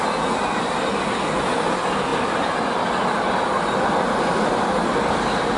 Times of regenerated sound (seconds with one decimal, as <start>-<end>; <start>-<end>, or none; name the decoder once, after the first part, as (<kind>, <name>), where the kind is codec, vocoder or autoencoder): none